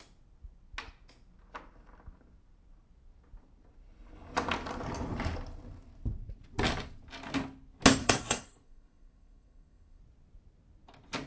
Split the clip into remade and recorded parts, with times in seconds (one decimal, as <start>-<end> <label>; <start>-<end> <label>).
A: 0.0-8.0 recorded; 8.0-10.0 remade; 10.0-11.3 recorded